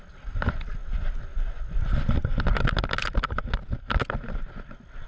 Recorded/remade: recorded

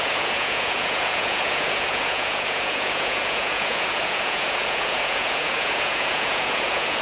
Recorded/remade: remade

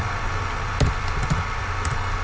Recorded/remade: recorded